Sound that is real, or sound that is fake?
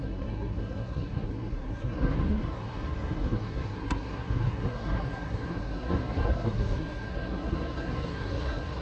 fake